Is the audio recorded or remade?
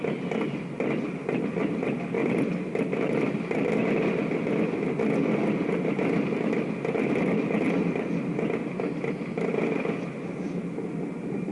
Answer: recorded